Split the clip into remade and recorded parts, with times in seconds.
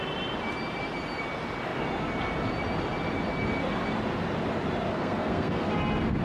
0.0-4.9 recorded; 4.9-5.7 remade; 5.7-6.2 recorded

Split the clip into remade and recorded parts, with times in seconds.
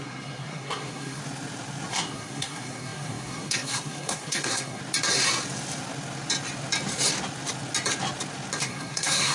0.0-1.2 remade; 1.2-1.9 recorded; 1.9-4.8 remade; 4.8-8.6 recorded; 8.6-9.3 remade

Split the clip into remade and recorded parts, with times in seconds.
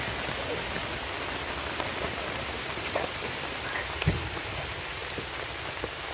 0.0-0.8 recorded; 0.8-4.5 remade; 4.5-6.1 recorded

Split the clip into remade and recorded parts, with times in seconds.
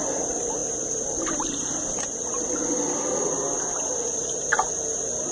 0.0-5.3 recorded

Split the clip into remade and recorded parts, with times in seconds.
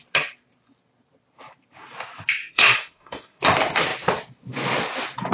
0.0-2.4 recorded; 2.4-3.4 remade; 3.4-5.3 recorded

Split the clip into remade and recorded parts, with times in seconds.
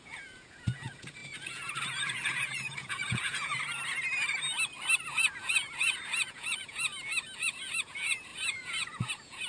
0.0-3.5 remade; 3.5-5.0 recorded; 5.0-6.9 remade; 6.9-7.4 recorded; 7.4-9.5 remade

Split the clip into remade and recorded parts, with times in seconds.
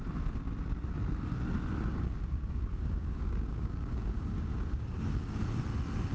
0.0-1.9 recorded; 1.9-5.4 remade; 5.4-6.1 recorded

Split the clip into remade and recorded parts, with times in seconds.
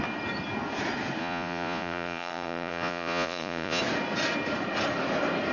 0.0-1.2 recorded; 1.2-3.8 remade; 3.8-5.5 recorded